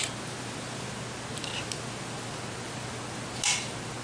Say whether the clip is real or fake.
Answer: real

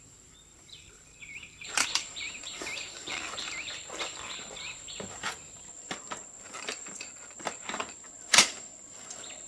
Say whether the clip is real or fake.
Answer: fake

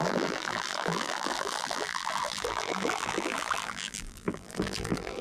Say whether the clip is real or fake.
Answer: fake